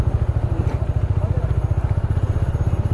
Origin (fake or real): real